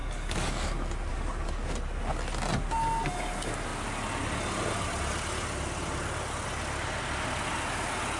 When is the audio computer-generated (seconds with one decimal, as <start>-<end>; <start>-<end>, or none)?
0.0-0.7; 1.1-1.7